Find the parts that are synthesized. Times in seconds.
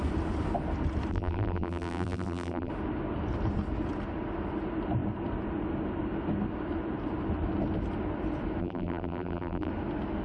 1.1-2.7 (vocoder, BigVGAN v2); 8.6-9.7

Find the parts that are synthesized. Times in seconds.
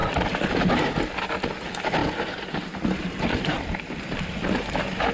3.3-4.4 (vocoder, BigVGAN v2)